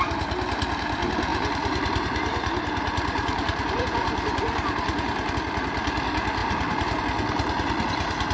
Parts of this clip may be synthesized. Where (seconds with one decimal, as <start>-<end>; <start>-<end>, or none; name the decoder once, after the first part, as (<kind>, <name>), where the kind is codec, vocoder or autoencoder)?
1.3-5.3 (vocoder, BigVGAN v2); 6.4-7.0